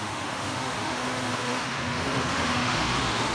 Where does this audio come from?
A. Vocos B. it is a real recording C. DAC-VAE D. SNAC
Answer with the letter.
C